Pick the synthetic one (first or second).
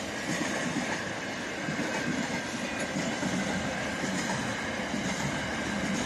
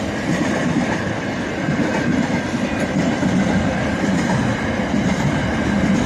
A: second